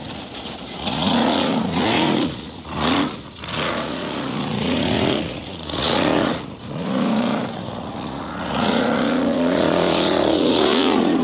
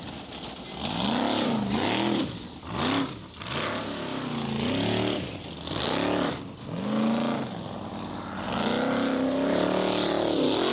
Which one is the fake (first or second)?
first